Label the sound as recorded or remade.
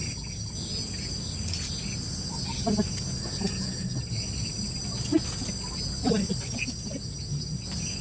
recorded